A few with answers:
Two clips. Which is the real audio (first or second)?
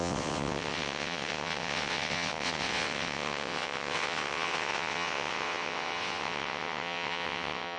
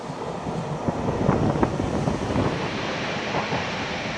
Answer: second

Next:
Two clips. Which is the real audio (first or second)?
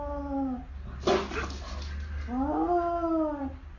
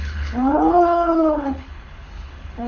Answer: first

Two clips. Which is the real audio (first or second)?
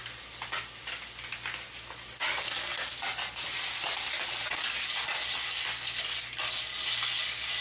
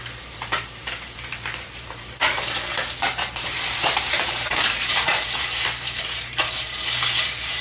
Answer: first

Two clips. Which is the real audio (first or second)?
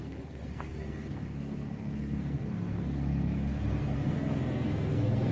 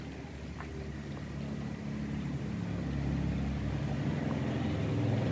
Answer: second